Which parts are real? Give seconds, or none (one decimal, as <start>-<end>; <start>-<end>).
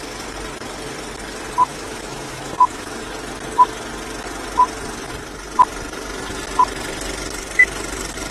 0.0-1.7; 3.0-8.3